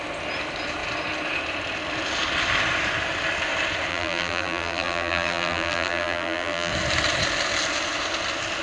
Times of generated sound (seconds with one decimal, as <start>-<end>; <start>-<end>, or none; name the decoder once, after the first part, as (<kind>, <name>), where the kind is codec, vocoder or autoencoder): 3.9-6.7 (vocoder, BigVGAN v2)